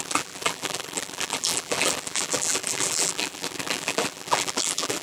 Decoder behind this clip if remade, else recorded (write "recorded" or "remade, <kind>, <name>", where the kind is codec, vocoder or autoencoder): remade, vocoder, BigVGAN v2